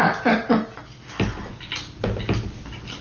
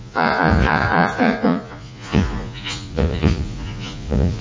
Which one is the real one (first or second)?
first